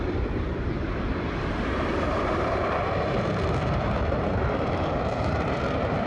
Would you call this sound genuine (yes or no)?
no